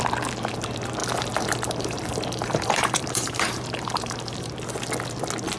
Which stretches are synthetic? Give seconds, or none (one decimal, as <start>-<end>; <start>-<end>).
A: 1.0-4.4